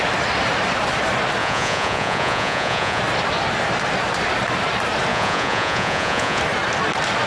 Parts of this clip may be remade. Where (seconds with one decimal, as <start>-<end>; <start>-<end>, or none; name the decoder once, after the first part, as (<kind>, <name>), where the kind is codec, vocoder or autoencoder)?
1.4-3.0 (vocoder, Vocos); 5.1-6.4